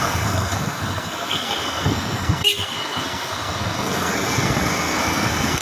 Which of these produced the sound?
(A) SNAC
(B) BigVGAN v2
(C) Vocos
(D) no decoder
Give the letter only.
A